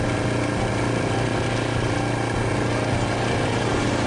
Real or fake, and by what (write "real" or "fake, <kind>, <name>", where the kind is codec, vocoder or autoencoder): real